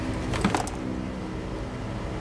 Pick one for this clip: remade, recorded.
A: recorded